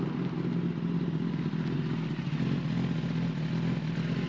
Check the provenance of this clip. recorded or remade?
recorded